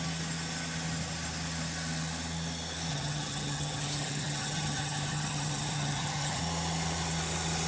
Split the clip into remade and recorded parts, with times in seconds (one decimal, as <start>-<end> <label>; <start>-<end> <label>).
0.0-2.9 recorded; 2.9-6.4 remade; 6.4-7.7 recorded